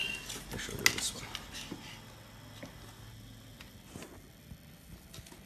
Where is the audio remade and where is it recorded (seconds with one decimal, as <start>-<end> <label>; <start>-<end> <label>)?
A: 0.0-5.5 recorded

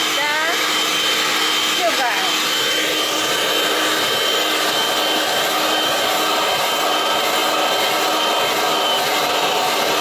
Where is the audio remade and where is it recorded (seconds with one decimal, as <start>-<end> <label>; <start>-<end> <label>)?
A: 0.0-10.0 recorded

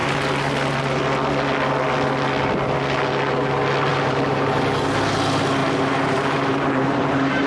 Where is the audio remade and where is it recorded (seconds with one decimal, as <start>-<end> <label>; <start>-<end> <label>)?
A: 0.0-3.9 recorded; 3.9-4.6 remade; 4.6-5.6 recorded; 5.6-7.5 remade

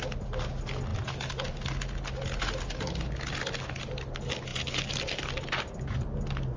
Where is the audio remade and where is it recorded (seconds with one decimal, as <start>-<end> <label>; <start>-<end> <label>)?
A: 0.0-6.6 recorded

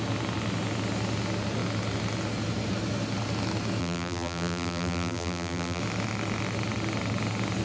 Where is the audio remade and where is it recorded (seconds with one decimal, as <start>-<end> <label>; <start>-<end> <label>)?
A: 0.0-3.8 recorded; 3.8-5.8 remade; 5.8-7.6 recorded

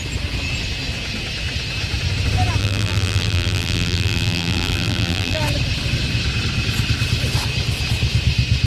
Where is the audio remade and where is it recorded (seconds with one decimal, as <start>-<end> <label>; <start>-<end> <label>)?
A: 0.0-2.6 recorded; 2.6-5.4 remade; 5.4-8.7 recorded